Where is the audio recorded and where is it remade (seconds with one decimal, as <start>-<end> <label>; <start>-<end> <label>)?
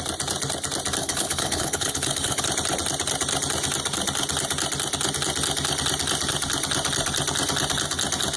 0.0-1.0 recorded; 1.0-2.4 remade; 2.4-8.4 recorded